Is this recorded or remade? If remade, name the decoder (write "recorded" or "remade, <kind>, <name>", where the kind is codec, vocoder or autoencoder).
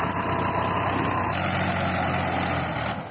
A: recorded